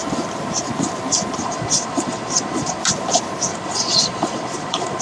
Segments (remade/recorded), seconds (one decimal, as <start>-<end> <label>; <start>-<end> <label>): 0.0-1.4 recorded; 1.4-2.8 remade; 2.8-3.5 recorded; 3.5-5.0 remade

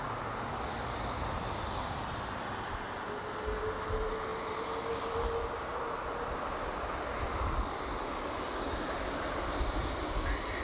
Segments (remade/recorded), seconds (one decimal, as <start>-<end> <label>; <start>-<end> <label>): 0.0-10.6 recorded

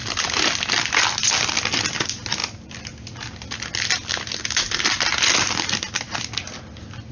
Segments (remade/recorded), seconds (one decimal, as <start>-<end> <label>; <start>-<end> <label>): 0.0-7.1 recorded

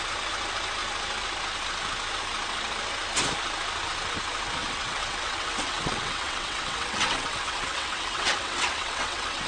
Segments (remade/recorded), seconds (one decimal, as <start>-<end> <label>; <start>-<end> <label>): 0.0-4.6 recorded; 4.6-9.5 remade

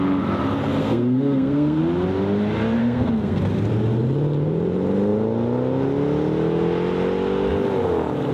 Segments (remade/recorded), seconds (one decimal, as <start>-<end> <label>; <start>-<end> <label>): 0.0-0.8 recorded; 0.8-1.8 remade; 1.8-2.8 recorded; 2.8-3.4 remade; 3.4-8.3 recorded